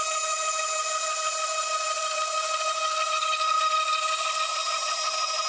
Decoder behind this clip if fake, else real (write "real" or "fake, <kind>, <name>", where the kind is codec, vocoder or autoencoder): fake, vocoder, BigVGAN v2